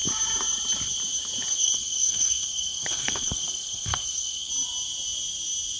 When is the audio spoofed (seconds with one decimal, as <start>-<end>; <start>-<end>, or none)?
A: 1.5-4.5